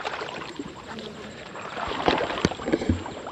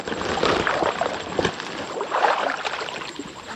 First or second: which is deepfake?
first